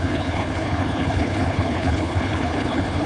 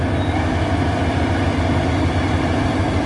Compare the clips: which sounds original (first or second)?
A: second